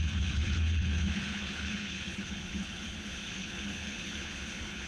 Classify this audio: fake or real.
fake